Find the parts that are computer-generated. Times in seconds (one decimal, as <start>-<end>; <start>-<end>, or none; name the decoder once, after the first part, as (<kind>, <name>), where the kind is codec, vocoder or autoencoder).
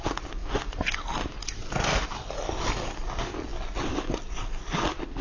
none